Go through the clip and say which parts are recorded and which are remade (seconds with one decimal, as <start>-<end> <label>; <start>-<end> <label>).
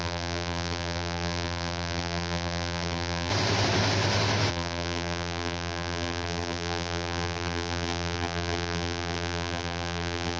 0.0-3.3 remade; 3.3-4.5 recorded; 4.5-10.4 remade